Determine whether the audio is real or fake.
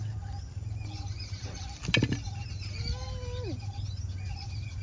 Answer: real